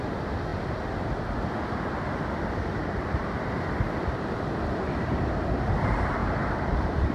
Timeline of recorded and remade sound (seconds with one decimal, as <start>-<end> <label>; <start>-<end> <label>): 0.0-6.2 recorded; 6.2-7.1 remade